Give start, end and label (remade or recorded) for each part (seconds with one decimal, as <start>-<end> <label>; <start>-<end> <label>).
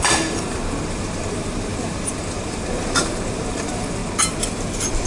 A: 0.0-4.0 remade; 4.0-5.1 recorded